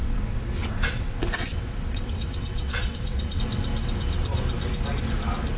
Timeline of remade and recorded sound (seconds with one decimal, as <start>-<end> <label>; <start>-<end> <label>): 0.0-3.4 remade; 3.4-5.6 recorded